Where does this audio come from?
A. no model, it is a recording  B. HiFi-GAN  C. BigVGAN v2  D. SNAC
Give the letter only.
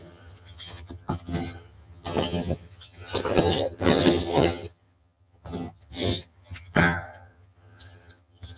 B